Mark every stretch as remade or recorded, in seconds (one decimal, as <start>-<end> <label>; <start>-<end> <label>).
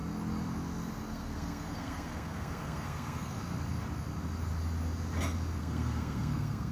0.0-1.1 recorded; 1.1-3.4 remade; 3.4-5.6 recorded; 5.6-6.7 remade